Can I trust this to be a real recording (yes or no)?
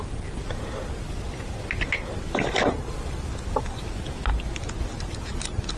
yes